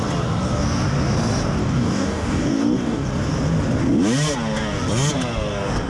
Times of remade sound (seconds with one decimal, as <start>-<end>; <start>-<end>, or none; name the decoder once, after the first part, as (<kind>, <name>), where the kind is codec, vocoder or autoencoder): 1.6-3.1 (codec, DAC)